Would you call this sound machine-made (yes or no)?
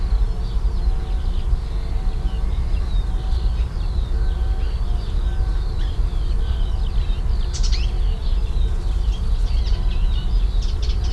no